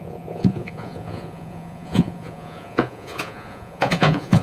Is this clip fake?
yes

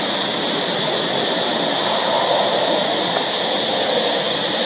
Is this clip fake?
no